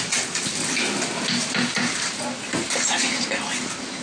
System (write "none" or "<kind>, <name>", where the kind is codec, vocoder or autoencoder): none